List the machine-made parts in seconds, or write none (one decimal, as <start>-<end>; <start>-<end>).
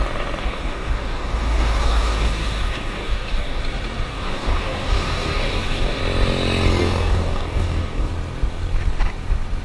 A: 0.4-3.6; 4.1-6.0; 6.8-8.1